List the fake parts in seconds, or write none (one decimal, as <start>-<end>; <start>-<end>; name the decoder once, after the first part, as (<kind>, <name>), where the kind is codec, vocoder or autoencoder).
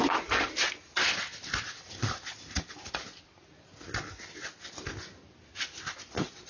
2.3-2.9 (vocoder, Vocos)